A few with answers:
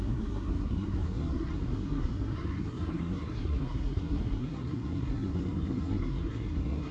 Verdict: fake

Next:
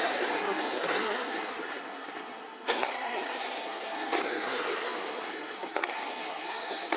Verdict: fake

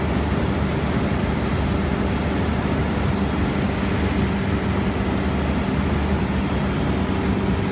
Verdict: real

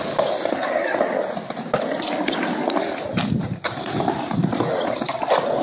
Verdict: real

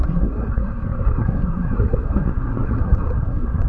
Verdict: fake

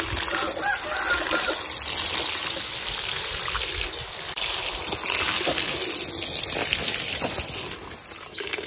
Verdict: real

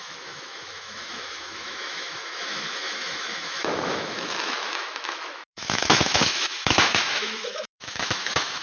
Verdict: fake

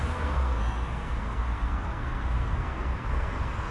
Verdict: fake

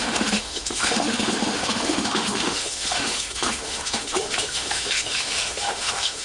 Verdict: fake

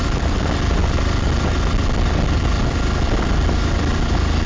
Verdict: real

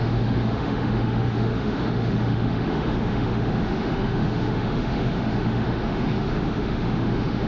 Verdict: fake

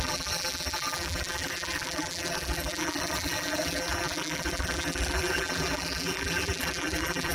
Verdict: fake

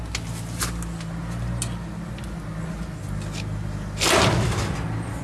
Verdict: real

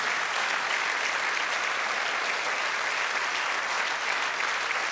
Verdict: real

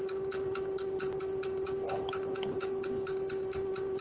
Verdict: real